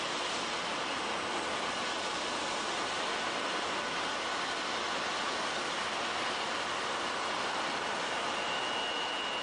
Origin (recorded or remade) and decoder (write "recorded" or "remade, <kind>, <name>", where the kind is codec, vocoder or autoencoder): recorded